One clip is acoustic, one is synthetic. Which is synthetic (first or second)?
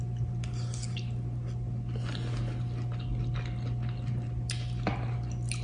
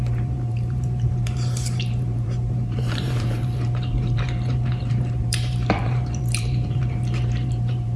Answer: second